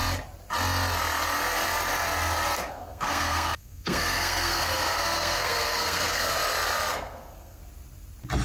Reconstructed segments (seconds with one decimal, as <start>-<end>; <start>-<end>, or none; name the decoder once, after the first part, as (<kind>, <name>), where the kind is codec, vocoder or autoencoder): 2.6-6.3 (codec, SNAC); 6.9-7.6